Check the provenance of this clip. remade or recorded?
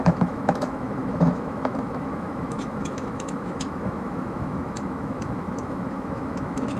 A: remade